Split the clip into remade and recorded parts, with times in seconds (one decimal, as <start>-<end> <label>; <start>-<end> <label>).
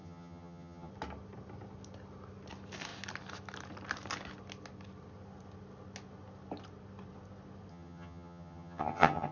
0.0-0.9 remade; 0.9-7.7 recorded; 7.7-9.3 remade